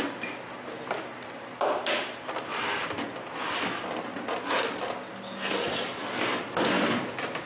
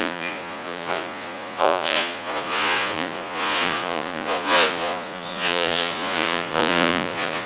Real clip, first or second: first